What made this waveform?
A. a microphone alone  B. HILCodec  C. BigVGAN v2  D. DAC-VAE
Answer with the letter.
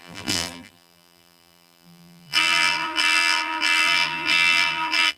C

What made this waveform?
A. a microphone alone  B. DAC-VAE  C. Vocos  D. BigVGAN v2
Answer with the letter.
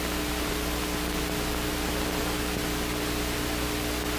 A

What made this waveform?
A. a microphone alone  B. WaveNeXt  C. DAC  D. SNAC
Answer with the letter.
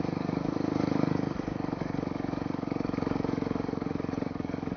C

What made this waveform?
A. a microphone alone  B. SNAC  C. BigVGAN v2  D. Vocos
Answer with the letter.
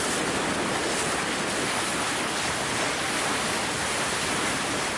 A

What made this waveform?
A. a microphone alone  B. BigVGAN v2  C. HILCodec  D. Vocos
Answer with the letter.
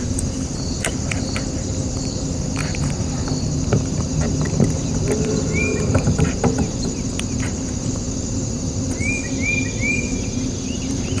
B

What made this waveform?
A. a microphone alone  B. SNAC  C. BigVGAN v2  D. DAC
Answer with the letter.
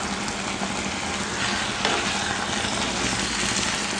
A